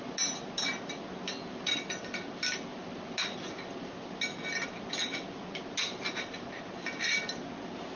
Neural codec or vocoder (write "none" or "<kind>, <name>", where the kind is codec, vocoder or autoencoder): none